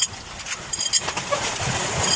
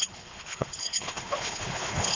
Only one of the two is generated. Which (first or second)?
second